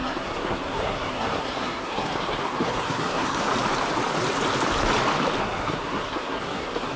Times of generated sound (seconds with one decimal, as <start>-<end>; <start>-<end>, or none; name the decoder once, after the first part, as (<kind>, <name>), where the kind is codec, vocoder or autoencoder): 0.0-3.5 (codec, SNAC); 5.4-7.0